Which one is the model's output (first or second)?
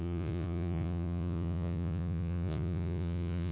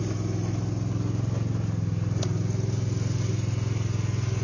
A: first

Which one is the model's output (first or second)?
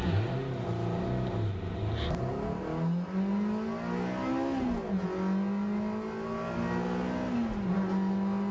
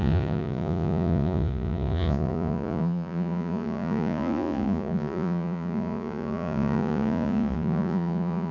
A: second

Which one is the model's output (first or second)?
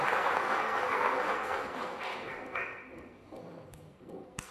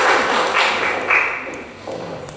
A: first